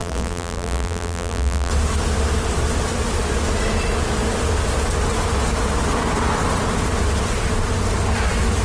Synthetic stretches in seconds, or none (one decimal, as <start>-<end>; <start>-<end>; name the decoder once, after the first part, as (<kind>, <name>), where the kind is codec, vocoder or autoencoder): 0.0-1.7 (vocoder, BigVGAN v2)